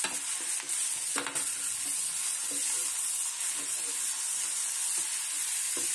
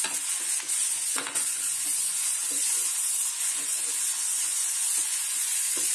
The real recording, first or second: first